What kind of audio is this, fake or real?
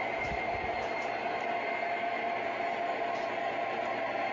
real